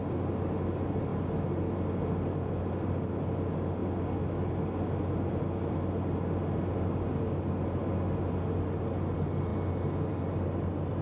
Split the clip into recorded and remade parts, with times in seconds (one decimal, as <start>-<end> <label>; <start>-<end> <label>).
0.0-11.0 recorded